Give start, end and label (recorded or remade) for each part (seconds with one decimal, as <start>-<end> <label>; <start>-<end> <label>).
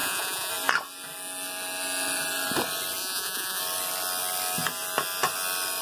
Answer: 0.0-0.5 remade; 0.5-3.0 recorded; 3.0-3.6 remade; 3.6-5.8 recorded